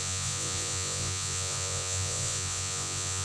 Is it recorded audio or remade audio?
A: remade